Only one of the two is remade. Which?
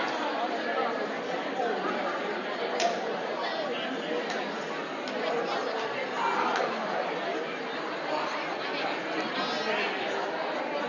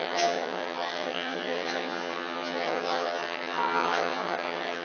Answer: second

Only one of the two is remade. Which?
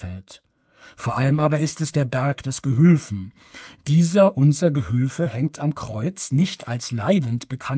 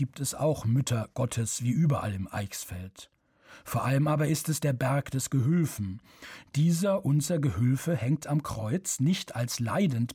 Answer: first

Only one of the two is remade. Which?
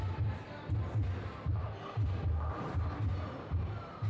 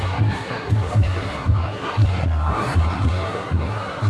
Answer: second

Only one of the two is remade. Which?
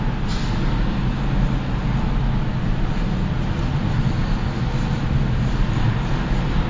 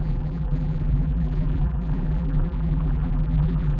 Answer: second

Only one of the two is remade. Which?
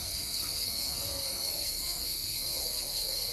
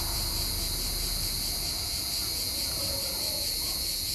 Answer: first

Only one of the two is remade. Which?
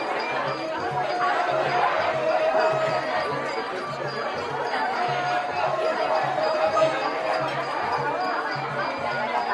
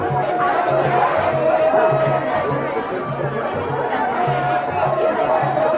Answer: first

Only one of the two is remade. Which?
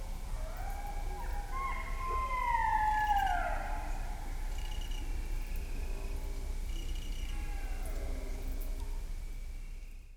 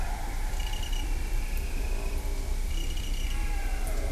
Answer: second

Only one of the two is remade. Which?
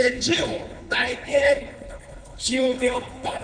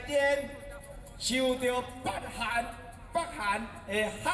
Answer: first